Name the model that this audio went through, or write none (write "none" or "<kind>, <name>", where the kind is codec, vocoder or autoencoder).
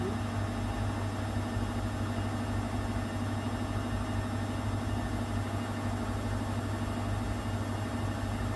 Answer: none